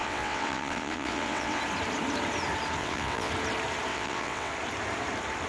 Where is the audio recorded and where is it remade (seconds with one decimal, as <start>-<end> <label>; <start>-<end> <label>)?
0.0-1.6 remade; 1.6-2.8 recorded; 2.8-3.3 remade; 3.3-3.9 recorded; 3.9-4.5 remade; 4.5-5.5 recorded